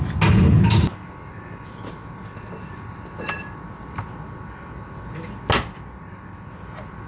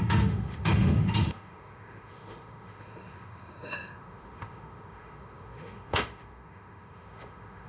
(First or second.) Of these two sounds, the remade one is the second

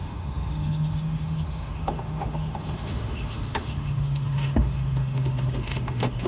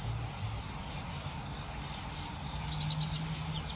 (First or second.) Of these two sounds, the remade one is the first